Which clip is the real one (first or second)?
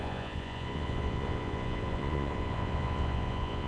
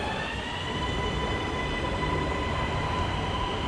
second